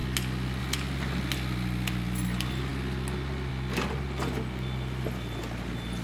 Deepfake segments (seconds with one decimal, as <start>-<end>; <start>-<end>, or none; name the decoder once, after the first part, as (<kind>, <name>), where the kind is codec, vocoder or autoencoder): none